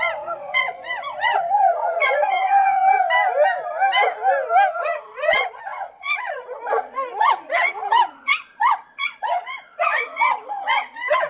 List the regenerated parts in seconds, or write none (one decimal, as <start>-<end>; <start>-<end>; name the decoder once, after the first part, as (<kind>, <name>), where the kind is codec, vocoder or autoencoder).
0.0-2.8 (vocoder, Vocos); 4.8-11.3